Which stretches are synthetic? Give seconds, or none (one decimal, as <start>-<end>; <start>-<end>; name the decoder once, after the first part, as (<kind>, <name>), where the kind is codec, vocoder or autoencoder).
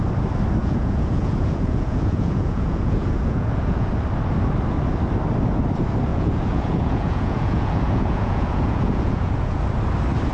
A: 0.6-3.9 (vocoder, Vocos); 6.1-9.6